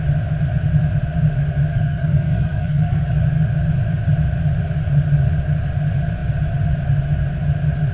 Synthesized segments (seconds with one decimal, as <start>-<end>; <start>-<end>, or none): 1.7-3.2